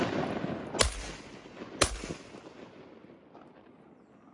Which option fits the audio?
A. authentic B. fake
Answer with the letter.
A